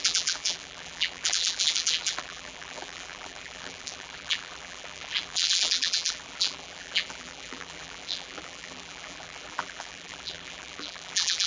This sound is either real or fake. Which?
fake